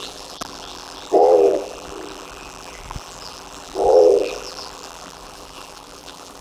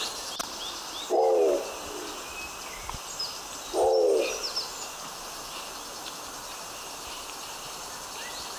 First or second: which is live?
second